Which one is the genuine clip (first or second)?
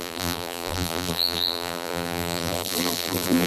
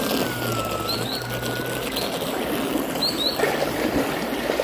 second